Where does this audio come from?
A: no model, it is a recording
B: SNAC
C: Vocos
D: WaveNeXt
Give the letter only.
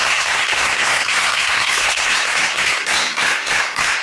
B